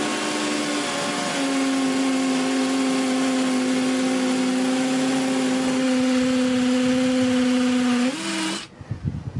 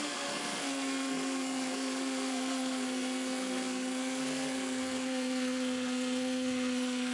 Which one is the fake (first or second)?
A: second